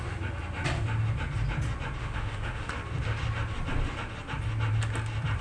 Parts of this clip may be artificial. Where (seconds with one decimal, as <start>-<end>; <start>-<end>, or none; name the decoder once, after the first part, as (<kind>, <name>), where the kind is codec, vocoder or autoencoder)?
2.0-2.7 (autoencoder, DAC-VAE)